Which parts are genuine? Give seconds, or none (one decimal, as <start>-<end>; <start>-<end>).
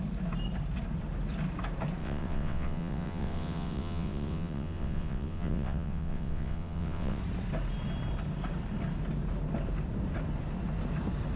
0.0-2.0; 7.2-11.4